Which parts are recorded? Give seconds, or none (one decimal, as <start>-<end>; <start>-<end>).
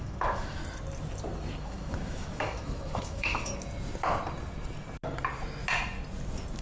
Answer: 0.6-1.6; 3.5-6.6